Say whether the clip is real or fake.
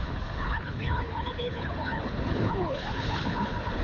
fake